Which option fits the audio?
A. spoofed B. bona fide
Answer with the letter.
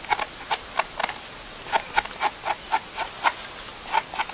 B